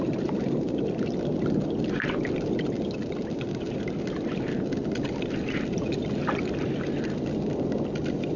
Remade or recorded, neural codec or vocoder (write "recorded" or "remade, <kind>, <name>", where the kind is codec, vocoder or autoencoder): recorded